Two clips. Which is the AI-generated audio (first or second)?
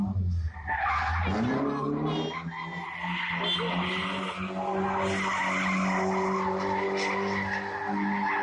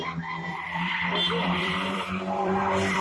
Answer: second